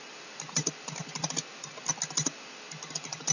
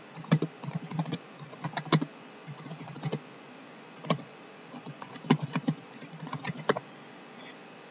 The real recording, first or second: first